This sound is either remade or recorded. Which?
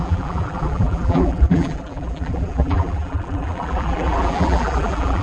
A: remade